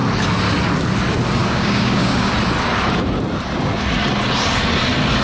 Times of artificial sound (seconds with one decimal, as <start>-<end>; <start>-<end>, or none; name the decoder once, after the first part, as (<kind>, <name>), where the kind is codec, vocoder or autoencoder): 1.4-2.3 (codec, DAC)